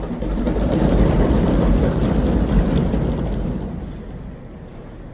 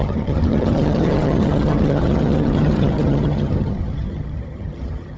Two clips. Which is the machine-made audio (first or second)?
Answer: second